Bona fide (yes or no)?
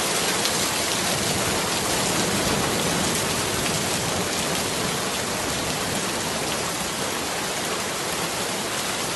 yes